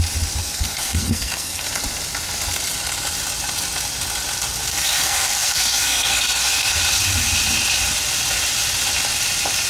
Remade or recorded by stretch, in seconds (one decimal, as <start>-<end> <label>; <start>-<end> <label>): 0.0-0.4 recorded; 0.4-1.7 remade; 1.7-4.7 recorded; 4.7-6.8 remade; 6.8-9.7 recorded